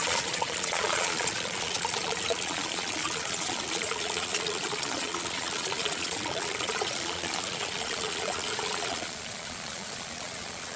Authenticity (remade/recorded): remade